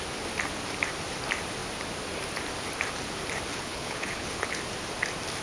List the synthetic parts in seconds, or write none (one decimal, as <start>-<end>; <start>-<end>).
3.5-4.6